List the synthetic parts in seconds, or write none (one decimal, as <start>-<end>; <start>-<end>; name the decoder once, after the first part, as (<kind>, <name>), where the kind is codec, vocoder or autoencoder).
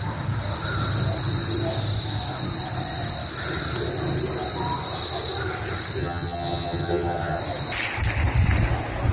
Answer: 6.0-7.4 (vocoder, HiFi-GAN)